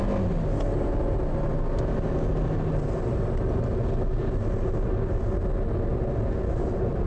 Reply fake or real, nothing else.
real